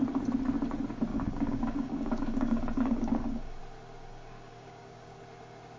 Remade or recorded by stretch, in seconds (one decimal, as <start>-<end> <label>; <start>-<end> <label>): 0.0-1.1 recorded; 1.1-3.6 remade; 3.6-4.1 recorded; 4.1-5.2 remade; 5.2-5.8 recorded